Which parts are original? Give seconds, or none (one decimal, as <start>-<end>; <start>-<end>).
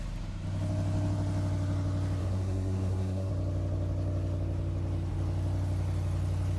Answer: 0.0-2.2; 3.3-6.6